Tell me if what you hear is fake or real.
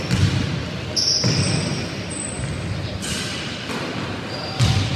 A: real